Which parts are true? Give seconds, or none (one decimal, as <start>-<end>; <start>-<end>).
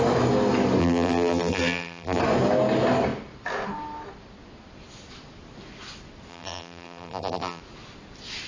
0.0-0.8; 2.2-6.3; 7.6-8.5